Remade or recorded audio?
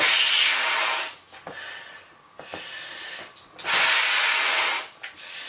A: recorded